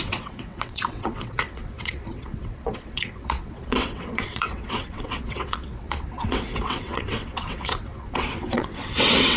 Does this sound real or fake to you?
fake